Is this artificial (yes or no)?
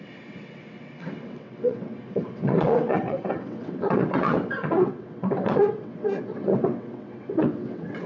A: yes